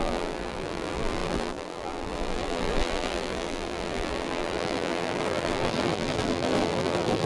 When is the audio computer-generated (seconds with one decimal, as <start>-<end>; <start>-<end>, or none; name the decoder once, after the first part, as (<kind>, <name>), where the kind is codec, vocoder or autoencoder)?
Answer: 0.0-7.3 (vocoder, BigVGAN v2)